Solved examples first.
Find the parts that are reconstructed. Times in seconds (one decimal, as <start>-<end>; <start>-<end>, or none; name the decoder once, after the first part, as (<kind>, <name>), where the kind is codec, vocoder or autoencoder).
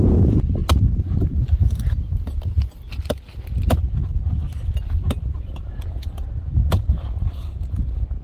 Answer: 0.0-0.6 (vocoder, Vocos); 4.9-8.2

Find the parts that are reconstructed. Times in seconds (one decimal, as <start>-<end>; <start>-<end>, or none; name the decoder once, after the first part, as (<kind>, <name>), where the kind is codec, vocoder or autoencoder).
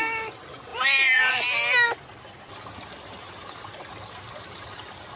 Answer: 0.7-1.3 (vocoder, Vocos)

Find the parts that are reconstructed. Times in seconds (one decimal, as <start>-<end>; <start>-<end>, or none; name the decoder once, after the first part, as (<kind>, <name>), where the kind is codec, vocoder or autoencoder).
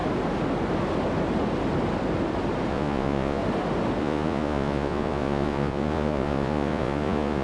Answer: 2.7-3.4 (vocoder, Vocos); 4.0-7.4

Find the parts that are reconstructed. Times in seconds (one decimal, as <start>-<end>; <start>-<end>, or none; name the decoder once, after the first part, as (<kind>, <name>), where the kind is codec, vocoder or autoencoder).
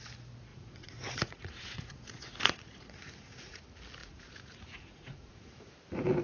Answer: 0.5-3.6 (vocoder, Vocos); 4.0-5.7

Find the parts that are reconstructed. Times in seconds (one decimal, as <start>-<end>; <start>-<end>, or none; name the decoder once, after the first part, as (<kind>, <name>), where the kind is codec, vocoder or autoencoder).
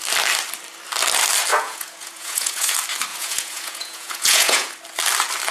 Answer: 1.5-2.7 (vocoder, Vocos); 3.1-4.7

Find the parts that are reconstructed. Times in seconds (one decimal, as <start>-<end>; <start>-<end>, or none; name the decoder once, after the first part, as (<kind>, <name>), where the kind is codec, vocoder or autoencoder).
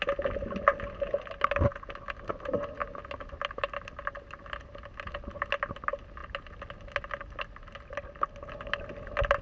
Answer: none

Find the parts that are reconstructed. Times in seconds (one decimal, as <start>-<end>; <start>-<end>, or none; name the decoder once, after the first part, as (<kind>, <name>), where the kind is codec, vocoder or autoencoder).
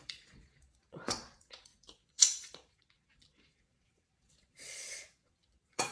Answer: 0.0-5.9 (vocoder, Vocos)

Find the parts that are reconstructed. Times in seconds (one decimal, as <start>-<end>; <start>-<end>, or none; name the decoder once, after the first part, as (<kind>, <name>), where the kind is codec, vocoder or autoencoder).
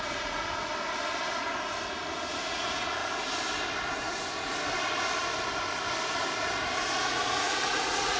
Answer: 0.0-0.7 (vocoder, Vocos); 2.3-3.0; 7.0-8.2